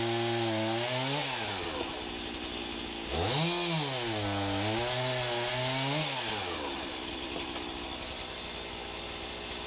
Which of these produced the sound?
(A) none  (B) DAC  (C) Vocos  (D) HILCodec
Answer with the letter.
A